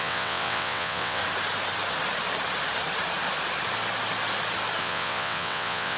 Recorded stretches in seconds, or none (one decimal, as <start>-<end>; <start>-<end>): 1.2-4.8